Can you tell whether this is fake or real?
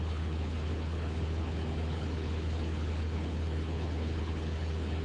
fake